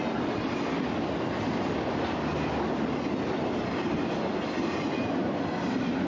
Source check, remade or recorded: recorded